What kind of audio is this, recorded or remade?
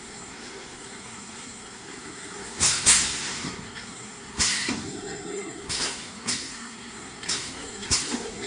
remade